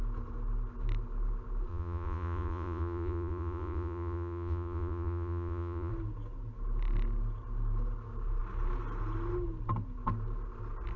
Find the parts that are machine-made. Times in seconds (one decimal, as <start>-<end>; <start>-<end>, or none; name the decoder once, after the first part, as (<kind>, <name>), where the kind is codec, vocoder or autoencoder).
1.7-5.9 (vocoder, Vocos)